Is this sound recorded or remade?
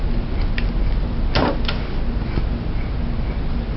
recorded